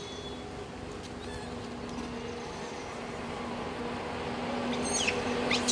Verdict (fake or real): real